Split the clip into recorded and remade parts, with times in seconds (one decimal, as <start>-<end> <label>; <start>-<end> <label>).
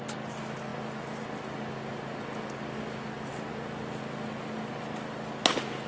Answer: 0.0-5.9 recorded